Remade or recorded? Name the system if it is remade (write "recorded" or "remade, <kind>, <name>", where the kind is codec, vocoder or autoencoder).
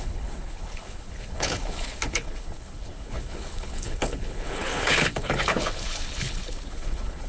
remade, codec, HILCodec